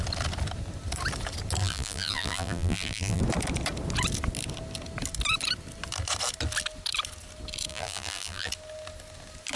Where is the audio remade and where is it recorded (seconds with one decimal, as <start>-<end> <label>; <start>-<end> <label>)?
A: 0.0-1.6 recorded; 1.6-3.2 remade; 3.2-7.7 recorded; 7.7-8.5 remade; 8.5-9.6 recorded